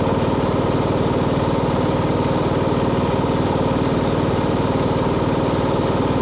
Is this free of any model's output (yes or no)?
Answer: yes